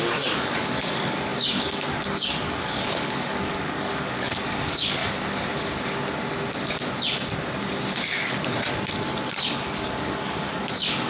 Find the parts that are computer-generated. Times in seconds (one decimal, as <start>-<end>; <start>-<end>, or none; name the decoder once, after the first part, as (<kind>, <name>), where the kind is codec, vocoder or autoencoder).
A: 0.0-5.0 (codec, DAC); 9.3-11.1